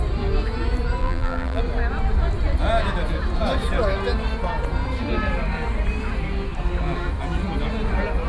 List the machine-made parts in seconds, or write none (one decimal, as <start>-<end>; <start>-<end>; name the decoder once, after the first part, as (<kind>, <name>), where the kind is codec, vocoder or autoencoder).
1.0-1.6 (vocoder, BigVGAN v2)